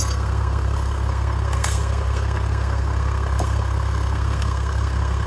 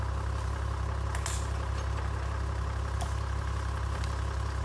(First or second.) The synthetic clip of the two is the first